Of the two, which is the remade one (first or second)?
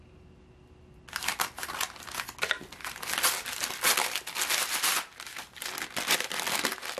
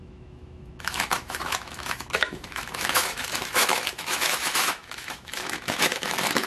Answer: second